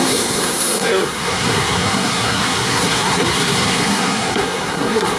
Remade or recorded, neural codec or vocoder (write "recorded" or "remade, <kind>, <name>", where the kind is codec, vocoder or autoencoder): remade, codec, SNAC